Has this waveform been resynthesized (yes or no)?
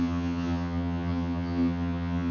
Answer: yes